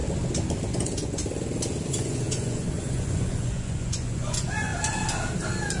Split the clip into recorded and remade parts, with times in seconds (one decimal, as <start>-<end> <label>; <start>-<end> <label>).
0.0-0.7 recorded; 0.7-1.2 remade; 1.2-1.9 recorded; 1.9-4.7 remade; 4.7-5.8 recorded